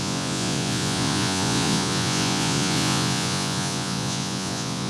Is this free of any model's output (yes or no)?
no